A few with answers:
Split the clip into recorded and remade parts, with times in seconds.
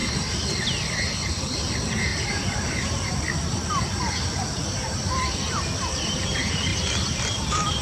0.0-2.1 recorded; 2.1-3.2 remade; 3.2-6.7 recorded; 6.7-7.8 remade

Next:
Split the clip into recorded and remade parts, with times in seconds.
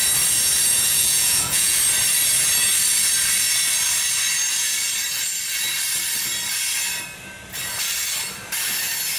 0.0-0.7 recorded; 0.7-1.8 remade; 1.8-9.2 recorded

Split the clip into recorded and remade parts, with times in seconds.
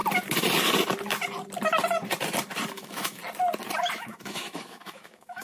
0.0-2.7 recorded; 2.7-3.2 remade; 3.2-3.9 recorded; 3.9-5.4 remade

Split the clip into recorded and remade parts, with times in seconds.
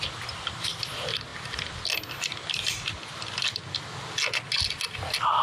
0.0-5.4 recorded